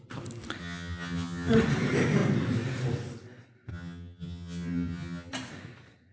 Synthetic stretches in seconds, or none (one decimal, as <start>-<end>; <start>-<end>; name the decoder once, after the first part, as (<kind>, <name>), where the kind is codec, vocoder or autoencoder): 0.6-1.5 (vocoder, HiFi-GAN); 3.7-5.3